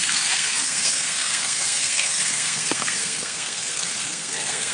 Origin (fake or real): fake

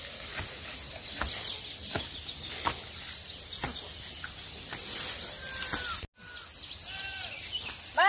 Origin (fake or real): real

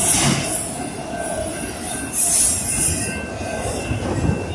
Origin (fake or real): real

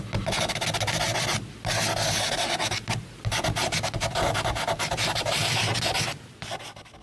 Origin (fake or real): real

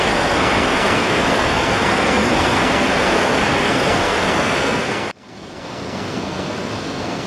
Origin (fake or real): fake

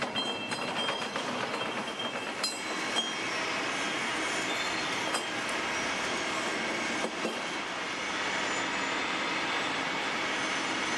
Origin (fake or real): real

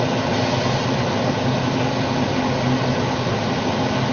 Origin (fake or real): real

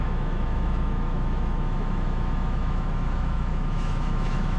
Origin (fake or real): fake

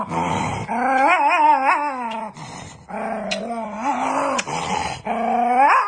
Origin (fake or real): real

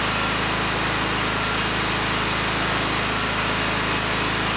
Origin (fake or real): real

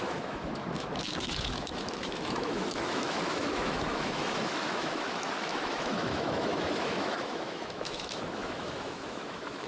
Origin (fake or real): fake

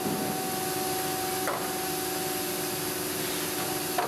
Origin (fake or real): real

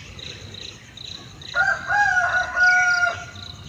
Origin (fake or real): real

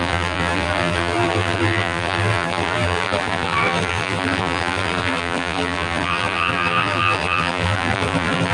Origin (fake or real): fake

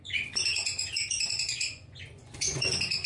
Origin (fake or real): fake